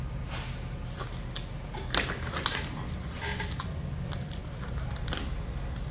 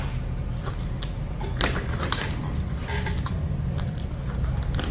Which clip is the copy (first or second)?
second